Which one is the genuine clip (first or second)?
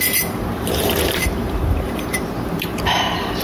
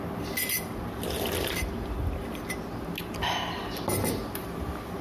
second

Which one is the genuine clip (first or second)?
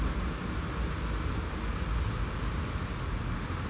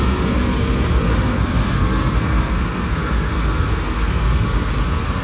first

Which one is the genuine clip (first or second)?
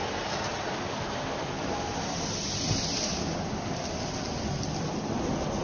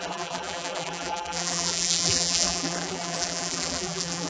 first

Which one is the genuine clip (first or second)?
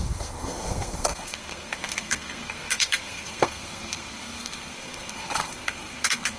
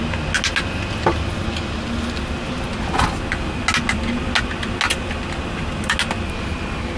second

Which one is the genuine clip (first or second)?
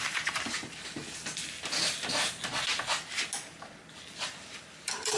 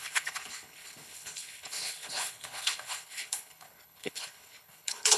first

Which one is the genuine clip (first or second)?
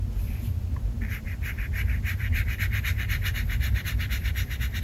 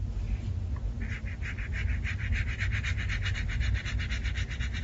second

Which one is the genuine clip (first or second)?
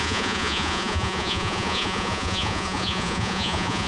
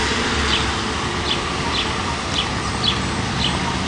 second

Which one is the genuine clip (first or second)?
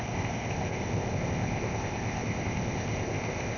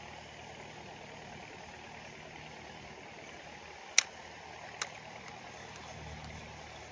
second